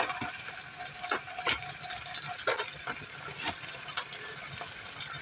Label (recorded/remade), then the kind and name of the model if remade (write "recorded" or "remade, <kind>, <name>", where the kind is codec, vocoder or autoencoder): recorded